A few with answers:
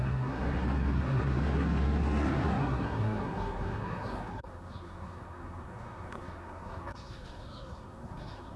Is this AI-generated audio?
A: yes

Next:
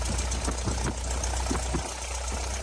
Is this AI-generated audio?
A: no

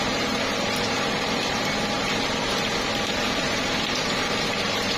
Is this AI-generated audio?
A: yes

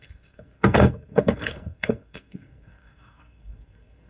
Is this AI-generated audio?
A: yes